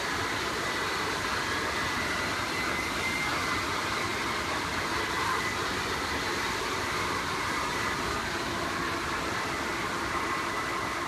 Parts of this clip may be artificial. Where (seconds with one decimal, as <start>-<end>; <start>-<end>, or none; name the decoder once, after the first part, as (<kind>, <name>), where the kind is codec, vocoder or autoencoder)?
none